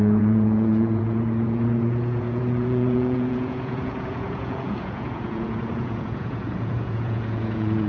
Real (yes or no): no